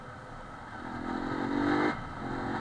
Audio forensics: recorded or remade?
recorded